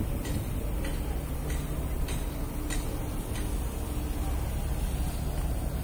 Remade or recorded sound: recorded